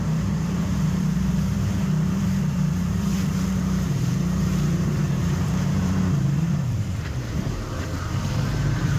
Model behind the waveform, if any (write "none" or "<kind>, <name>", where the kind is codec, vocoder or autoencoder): vocoder, BigVGAN v2